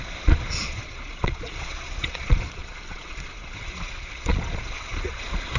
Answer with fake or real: fake